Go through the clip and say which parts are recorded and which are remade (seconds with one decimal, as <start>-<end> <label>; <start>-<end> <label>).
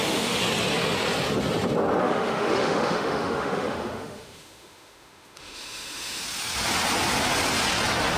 0.0-0.4 remade; 0.4-2.0 recorded; 2.0-6.2 remade; 6.2-8.2 recorded